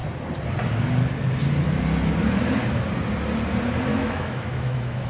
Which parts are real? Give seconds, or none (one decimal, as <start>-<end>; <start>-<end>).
0.0-3.9